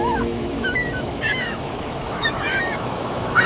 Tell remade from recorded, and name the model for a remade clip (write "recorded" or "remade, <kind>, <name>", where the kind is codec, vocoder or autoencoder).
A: remade, autoencoder, DAC-VAE